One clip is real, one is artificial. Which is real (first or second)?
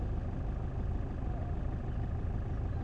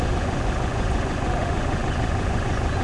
first